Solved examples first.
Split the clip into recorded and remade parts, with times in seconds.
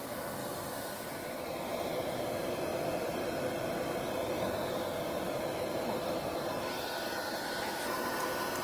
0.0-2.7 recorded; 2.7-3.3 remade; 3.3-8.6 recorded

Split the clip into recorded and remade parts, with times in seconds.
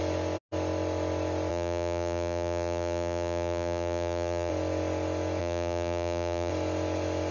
0.0-1.5 recorded; 1.5-4.5 remade; 4.5-5.4 recorded; 5.4-6.5 remade; 6.5-7.3 recorded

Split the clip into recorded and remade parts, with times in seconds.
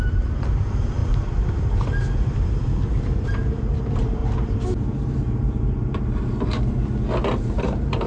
0.0-4.2 remade; 4.2-7.4 recorded; 7.4-8.1 remade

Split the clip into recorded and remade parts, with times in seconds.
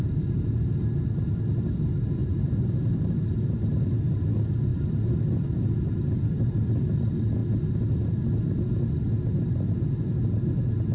0.0-2.2 recorded; 2.2-3.4 remade; 3.4-4.7 recorded; 4.7-7.0 remade; 7.0-10.9 recorded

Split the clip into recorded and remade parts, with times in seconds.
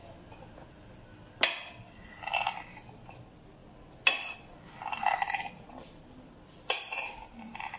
0.0-7.8 recorded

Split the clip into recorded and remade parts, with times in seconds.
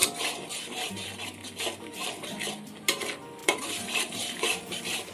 0.0-3.4 recorded; 3.4-5.1 remade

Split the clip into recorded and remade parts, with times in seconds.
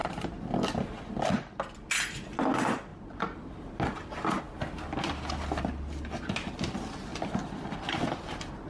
0.0-0.7 remade; 0.7-8.7 recorded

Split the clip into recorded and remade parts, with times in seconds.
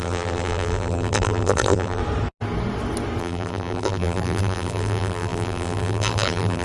0.0-2.0 remade; 2.0-3.2 recorded; 3.2-6.6 remade